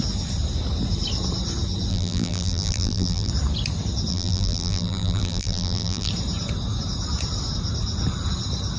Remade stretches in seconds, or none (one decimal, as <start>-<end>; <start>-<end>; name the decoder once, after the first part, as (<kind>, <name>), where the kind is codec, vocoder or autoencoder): 1.9-3.3 (vocoder, BigVGAN v2); 4.1-6.1